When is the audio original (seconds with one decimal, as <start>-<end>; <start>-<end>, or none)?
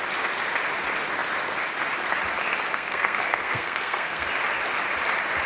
0.0-2.7; 4.3-5.5